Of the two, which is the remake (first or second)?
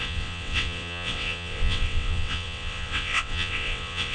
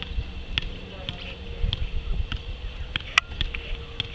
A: first